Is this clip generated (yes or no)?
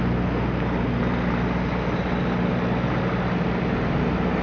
no